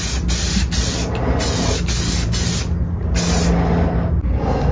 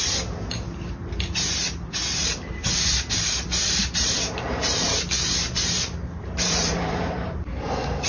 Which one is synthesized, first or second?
second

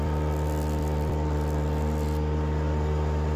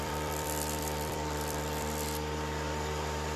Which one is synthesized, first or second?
second